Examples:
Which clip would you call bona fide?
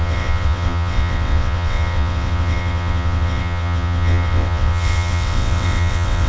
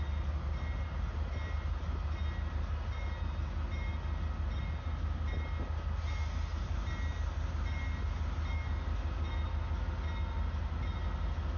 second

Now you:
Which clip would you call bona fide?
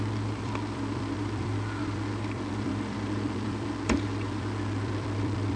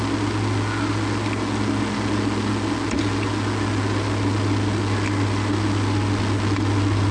second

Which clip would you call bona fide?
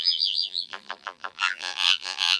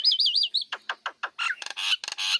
second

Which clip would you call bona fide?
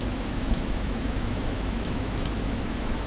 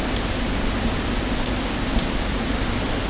second